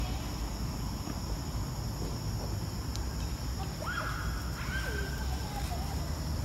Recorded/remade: recorded